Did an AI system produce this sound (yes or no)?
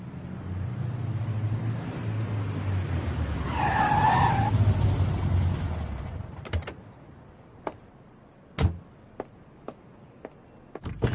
no